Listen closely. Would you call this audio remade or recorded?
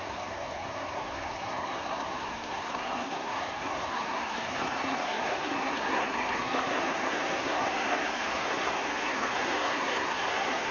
remade